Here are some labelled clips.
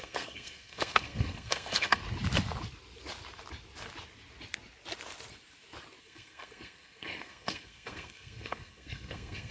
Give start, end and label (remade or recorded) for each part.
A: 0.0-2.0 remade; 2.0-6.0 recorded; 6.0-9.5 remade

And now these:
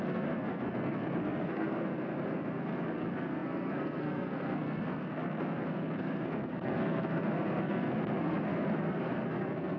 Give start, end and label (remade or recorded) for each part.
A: 0.0-9.8 remade

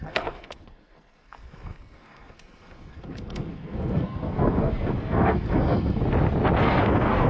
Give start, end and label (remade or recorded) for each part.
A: 0.0-6.0 remade; 6.0-6.6 recorded; 6.6-7.3 remade

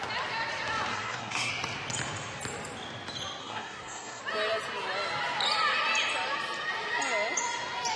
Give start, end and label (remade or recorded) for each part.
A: 0.0-0.9 recorded; 0.9-1.5 remade; 1.5-3.4 recorded; 3.4-4.2 remade; 4.2-8.0 recorded

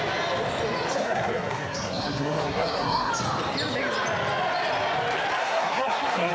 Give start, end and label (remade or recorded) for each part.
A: 0.0-0.9 recorded; 0.9-3.1 remade; 3.1-5.4 recorded; 5.4-6.3 remade